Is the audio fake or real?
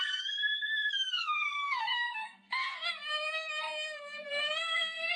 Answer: fake